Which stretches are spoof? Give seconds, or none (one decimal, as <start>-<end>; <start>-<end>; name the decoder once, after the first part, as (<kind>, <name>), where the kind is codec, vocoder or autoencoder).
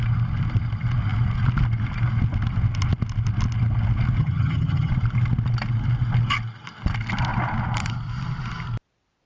4.2-4.9 (vocoder, HiFi-GAN)